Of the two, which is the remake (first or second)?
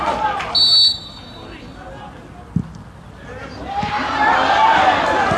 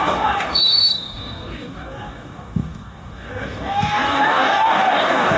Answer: second